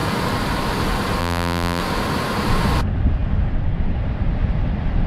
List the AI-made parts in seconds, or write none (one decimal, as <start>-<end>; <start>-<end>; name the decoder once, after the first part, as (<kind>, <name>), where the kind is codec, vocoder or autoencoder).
1.2-1.8 (vocoder, BigVGAN v2)